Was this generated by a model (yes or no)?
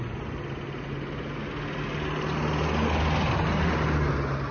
no